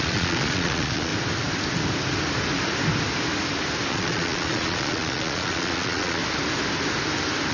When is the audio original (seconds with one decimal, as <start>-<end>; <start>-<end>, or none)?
1.1-3.9; 6.2-7.5